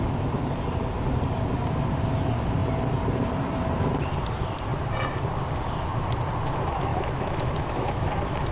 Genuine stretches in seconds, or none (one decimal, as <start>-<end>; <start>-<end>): 0.0-6.9; 8.1-8.5